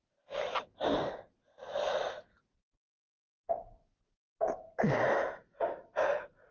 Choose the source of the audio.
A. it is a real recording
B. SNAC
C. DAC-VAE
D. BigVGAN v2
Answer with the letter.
A